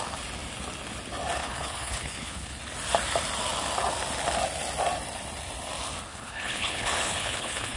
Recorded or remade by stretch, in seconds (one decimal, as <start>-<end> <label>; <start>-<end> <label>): 0.0-1.4 recorded; 1.4-2.6 remade; 2.6-6.1 recorded; 6.1-7.8 remade